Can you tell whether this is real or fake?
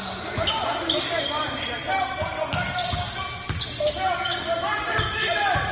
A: real